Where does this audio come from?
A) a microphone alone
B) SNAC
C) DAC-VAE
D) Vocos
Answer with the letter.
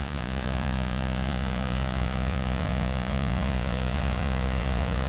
D